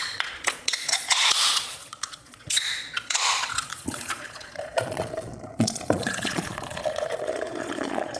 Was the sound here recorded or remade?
remade